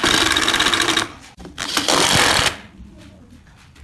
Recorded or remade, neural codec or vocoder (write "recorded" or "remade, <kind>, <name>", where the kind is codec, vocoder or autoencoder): recorded